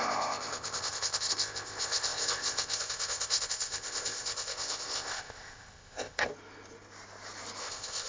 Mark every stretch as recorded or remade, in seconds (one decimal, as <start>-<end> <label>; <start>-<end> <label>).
0.0-6.3 remade; 6.3-7.6 recorded; 7.6-8.1 remade